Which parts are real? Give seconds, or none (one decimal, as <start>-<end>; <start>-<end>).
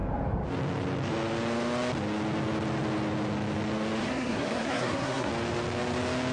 0.0-4.0; 5.3-6.3